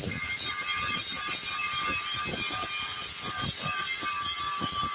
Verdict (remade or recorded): recorded